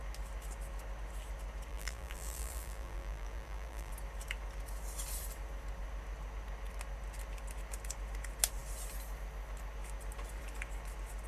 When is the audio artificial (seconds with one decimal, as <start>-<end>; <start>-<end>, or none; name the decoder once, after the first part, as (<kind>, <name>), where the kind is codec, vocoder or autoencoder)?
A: 1.7-3.9 (vocoder, BigVGAN v2)